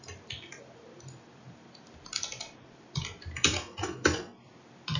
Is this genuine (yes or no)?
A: no